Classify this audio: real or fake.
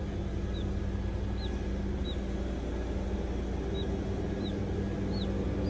real